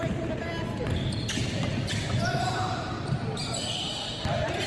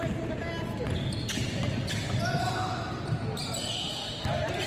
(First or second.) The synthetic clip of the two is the first